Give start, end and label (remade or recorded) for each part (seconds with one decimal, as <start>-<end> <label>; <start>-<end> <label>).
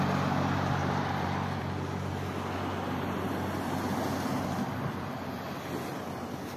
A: 0.0-0.8 recorded; 0.8-1.6 remade; 1.6-6.6 recorded